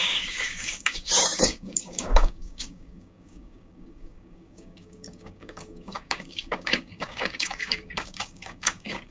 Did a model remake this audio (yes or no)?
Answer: yes